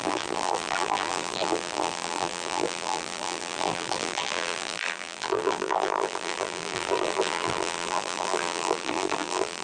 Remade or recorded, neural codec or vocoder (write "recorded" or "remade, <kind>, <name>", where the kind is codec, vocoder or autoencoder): remade, vocoder, BigVGAN v2